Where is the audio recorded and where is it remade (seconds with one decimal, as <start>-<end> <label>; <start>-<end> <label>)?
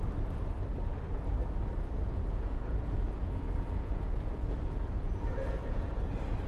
0.0-2.0 recorded; 2.0-5.9 remade; 5.9-6.5 recorded